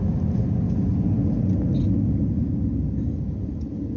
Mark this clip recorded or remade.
recorded